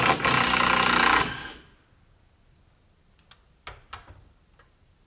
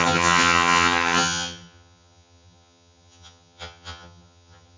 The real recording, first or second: first